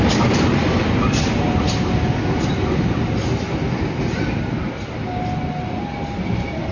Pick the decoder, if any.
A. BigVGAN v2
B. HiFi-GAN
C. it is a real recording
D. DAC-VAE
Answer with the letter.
C